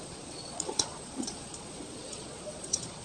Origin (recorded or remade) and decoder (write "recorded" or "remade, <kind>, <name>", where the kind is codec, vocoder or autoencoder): remade, vocoder, Vocos